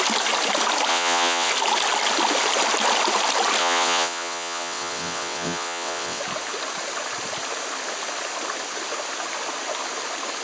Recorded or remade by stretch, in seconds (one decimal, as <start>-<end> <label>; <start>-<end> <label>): 0.0-0.9 recorded; 0.9-1.5 remade; 1.5-3.6 recorded; 3.6-6.2 remade; 6.2-10.4 recorded